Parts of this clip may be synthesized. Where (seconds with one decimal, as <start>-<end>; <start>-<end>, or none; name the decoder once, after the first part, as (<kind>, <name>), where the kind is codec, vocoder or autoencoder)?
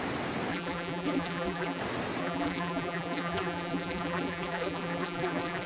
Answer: 0.5-1.8 (vocoder, BigVGAN v2); 2.2-5.7